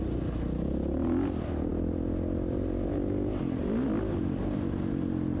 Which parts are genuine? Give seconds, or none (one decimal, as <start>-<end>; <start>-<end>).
0.0-5.4